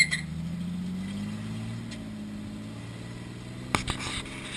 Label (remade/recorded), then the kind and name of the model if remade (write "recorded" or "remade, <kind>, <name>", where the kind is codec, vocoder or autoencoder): recorded